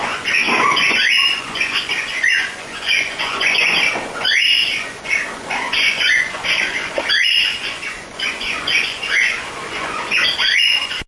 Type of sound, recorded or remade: remade